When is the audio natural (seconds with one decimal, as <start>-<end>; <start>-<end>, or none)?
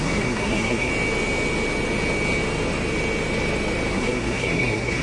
0.9-3.9